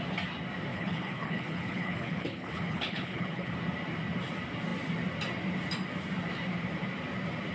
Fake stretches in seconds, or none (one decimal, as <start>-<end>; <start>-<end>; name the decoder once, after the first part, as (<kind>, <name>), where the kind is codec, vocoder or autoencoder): 0.7-3.5 (codec, HILCodec)